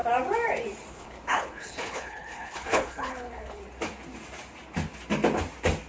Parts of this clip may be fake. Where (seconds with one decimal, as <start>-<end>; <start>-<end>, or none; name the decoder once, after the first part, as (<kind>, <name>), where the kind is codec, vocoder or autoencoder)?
0.9-3.6 (codec, HILCodec)